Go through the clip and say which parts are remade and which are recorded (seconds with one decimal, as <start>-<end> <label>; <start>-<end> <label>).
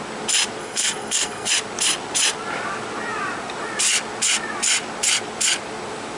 0.0-0.6 recorded; 0.6-1.5 remade; 1.5-6.2 recorded